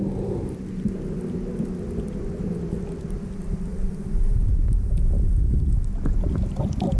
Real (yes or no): yes